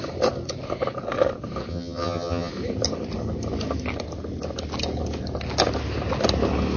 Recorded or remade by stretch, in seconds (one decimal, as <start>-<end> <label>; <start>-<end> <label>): 0.0-1.7 recorded; 1.7-2.5 remade; 2.5-6.8 recorded